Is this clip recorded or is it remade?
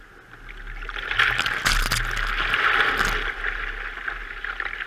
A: recorded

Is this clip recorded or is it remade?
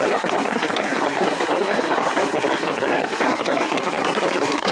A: remade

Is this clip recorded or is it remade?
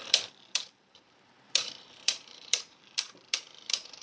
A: remade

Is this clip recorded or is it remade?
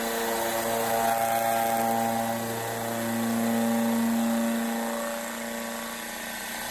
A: recorded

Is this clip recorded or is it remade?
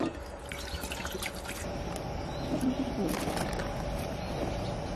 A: recorded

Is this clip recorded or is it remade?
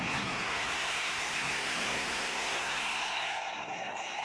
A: remade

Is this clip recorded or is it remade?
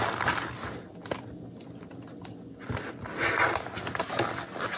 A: recorded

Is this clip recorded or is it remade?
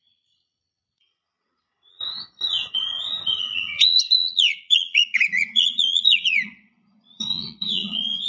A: remade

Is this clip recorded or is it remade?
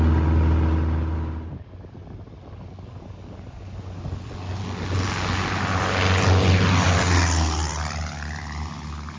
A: recorded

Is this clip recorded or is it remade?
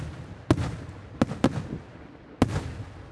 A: recorded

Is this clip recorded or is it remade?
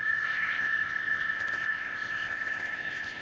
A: remade